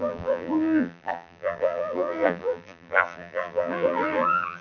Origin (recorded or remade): remade